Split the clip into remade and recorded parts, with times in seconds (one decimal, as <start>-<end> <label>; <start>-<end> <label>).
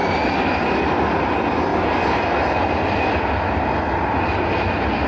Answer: 0.0-5.1 recorded